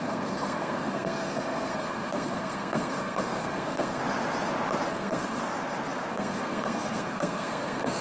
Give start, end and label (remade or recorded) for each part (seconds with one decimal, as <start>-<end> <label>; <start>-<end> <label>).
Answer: 0.0-4.0 remade; 4.0-4.9 recorded; 4.9-5.4 remade; 5.4-6.1 recorded; 6.1-8.0 remade